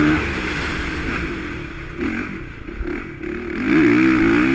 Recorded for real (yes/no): yes